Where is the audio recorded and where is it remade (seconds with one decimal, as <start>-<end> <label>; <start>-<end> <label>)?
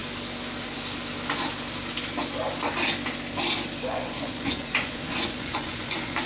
0.0-3.8 recorded; 3.8-6.3 remade